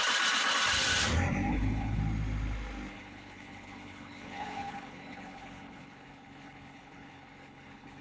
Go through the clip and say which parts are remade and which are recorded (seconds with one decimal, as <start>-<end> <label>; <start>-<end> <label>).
0.0-1.5 recorded; 1.5-2.0 remade; 2.0-2.9 recorded; 2.9-8.0 remade

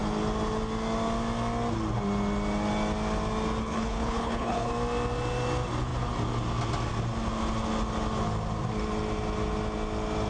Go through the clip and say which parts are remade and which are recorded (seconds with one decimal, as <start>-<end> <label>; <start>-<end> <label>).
0.0-3.6 recorded; 3.6-4.7 remade; 4.7-10.3 recorded

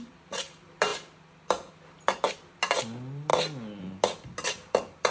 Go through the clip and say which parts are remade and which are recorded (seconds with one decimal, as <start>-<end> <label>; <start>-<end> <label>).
0.0-5.1 recorded

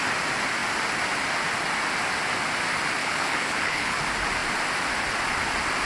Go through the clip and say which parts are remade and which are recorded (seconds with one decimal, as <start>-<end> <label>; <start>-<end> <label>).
0.0-3.0 recorded; 3.0-4.0 remade; 4.0-5.9 recorded

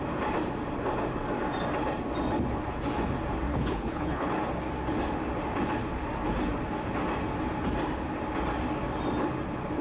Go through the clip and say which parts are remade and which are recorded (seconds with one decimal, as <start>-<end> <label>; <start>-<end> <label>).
0.0-3.5 recorded; 3.5-4.3 remade; 4.3-9.8 recorded

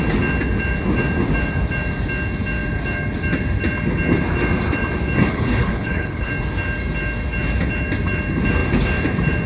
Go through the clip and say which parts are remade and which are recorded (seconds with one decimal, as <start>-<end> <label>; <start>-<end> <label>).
0.0-5.3 recorded; 5.3-6.3 remade; 6.3-9.5 recorded